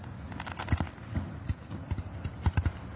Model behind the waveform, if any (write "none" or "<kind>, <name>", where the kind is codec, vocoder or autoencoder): none